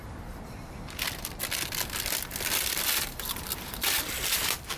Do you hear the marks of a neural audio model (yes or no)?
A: no